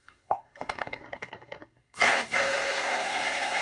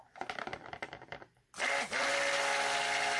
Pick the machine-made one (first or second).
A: first